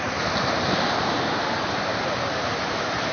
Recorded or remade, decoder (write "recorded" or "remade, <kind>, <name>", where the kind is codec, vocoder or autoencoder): remade, vocoder, BigVGAN v2